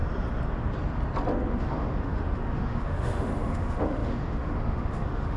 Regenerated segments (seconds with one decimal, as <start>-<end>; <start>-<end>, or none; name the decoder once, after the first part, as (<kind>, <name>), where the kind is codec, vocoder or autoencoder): 1.5-5.4 (autoencoder, DAC-VAE)